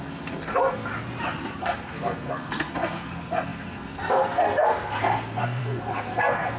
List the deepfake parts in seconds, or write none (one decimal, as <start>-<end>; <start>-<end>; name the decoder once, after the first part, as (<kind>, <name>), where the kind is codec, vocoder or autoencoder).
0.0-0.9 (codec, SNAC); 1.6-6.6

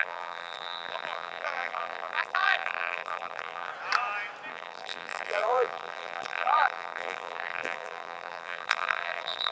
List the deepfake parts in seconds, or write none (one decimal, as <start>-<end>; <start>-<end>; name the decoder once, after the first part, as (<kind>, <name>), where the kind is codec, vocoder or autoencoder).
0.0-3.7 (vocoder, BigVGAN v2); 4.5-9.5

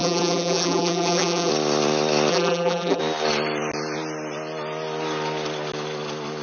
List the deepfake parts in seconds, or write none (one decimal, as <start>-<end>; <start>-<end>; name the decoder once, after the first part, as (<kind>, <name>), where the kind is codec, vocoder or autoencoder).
0.0-1.5 (vocoder, BigVGAN v2); 2.3-3.0

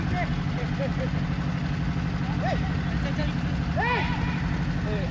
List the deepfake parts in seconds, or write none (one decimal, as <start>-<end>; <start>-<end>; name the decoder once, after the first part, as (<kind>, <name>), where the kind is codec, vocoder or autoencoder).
none

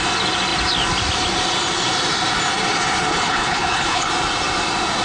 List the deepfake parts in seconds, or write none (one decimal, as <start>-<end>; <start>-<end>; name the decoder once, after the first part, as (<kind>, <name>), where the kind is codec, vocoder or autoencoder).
3.1-4.1 (codec, HILCodec)